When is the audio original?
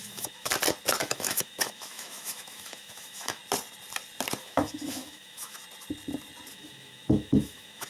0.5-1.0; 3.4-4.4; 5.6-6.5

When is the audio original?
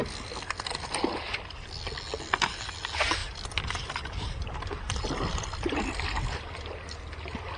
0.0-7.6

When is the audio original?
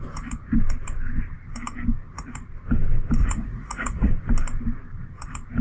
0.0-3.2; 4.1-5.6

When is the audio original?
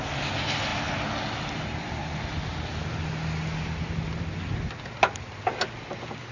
0.0-2.0; 4.2-6.3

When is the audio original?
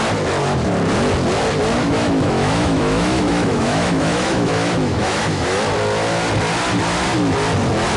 0.0-1.8; 5.6-8.0